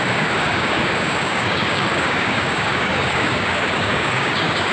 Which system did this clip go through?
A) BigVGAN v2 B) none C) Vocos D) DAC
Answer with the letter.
D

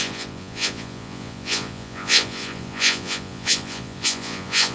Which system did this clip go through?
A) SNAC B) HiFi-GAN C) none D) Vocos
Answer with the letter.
D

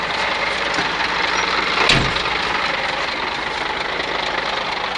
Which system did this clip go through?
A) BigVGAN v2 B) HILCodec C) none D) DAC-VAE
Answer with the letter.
C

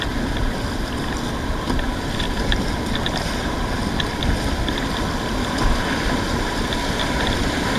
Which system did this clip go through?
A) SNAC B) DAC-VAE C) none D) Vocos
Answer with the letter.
C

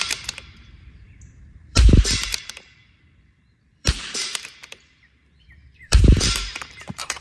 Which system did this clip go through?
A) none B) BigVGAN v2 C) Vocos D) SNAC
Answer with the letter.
B